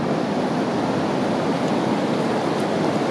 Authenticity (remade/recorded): recorded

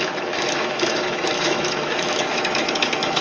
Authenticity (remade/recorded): remade